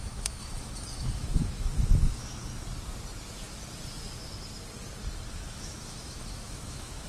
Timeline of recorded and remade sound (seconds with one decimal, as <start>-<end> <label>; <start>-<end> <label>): 0.0-2.5 remade; 2.5-5.3 recorded; 5.3-7.1 remade